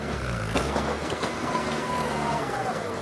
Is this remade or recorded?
remade